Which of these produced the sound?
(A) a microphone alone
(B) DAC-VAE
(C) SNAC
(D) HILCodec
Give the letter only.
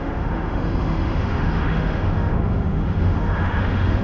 B